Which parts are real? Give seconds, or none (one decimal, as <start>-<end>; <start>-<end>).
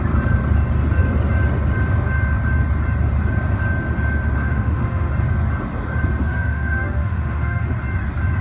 0.0-4.4; 5.1-6.2; 7.7-8.4